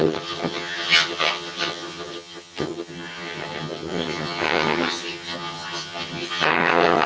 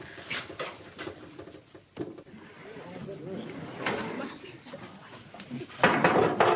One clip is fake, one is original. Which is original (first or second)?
second